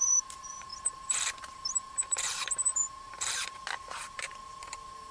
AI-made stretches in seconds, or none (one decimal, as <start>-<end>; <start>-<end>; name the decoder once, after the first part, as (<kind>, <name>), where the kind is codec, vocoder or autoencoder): 0.0-5.1 (vocoder, BigVGAN v2)